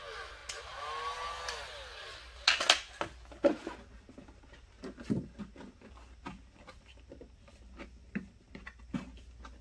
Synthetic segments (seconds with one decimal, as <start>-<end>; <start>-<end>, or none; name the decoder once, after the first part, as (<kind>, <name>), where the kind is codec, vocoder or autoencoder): none